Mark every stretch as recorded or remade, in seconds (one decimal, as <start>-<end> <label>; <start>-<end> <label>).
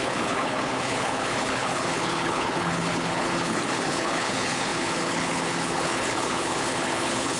0.0-7.4 remade